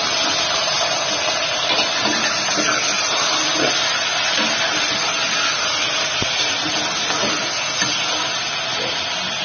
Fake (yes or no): no